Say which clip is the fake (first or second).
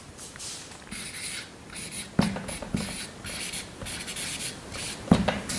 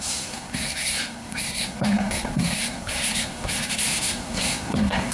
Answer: second